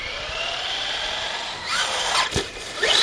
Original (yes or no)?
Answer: no